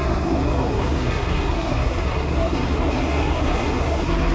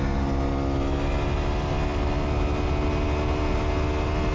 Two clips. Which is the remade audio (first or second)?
first